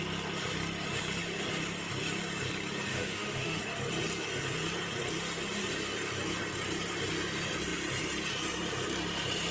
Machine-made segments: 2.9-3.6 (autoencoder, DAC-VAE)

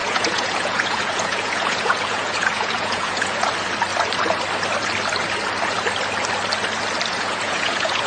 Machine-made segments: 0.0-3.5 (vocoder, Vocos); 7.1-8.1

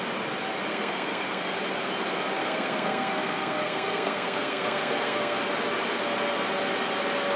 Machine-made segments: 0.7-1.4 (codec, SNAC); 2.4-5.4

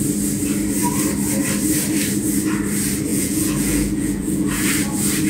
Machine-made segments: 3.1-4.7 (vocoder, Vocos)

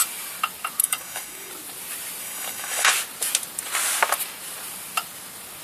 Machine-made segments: 0.8-1.5 (codec, DAC); 2.2-2.9